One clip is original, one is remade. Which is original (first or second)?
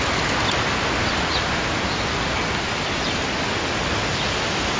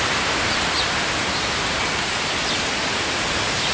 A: first